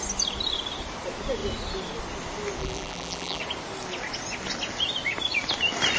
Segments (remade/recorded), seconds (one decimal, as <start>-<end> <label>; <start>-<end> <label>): 0.0-2.6 recorded; 2.6-3.4 remade; 3.4-6.0 recorded